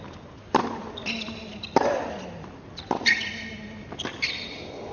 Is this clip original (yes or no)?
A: yes